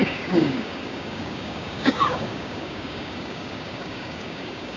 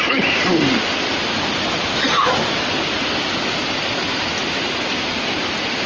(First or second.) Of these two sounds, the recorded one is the second